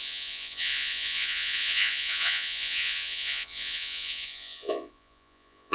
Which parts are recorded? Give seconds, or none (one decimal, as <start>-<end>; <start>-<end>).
none